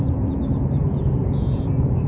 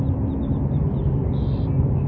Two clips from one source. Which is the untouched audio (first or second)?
second